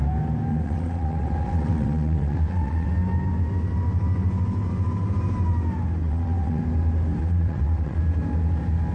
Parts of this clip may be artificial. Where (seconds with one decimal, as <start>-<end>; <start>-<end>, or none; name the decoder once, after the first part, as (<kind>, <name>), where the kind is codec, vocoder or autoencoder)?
0.5-2.9 (vocoder, WaveNeXt); 6.0-6.6; 7.2-8.0